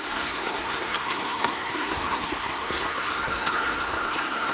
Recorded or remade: remade